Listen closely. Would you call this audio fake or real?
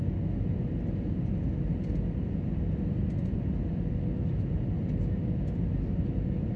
real